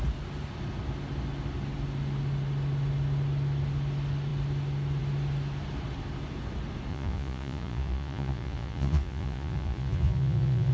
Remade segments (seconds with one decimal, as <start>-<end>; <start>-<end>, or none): 6.9-10.7